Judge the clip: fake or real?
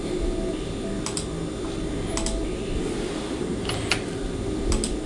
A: real